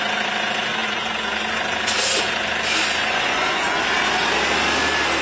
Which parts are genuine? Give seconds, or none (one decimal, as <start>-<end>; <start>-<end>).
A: 0.0-3.0; 3.8-5.2